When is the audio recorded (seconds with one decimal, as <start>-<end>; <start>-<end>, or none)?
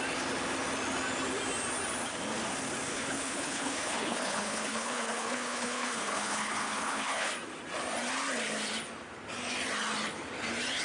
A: 0.0-2.9; 7.3-10.8